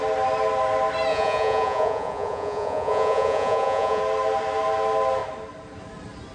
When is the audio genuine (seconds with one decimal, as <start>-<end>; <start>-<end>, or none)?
0.0-1.1; 4.0-6.3